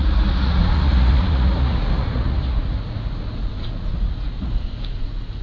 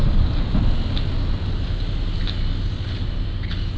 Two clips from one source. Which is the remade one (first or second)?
first